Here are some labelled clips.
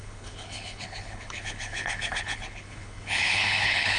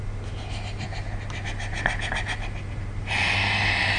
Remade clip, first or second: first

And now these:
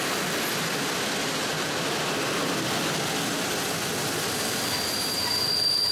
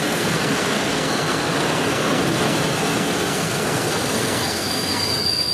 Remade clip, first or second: second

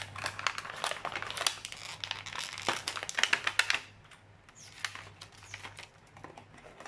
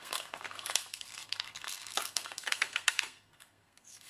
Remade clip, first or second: second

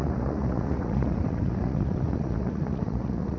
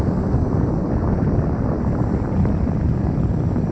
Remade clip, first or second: first